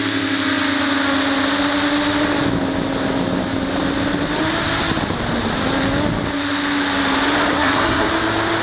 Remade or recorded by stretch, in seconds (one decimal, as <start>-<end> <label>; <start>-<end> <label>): 0.0-7.5 recorded; 7.5-8.1 remade; 8.1-8.6 recorded